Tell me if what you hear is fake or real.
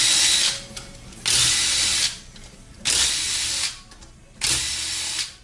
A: real